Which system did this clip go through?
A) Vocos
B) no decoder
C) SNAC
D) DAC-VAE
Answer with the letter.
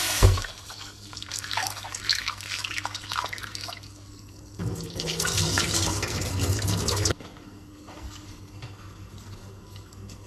C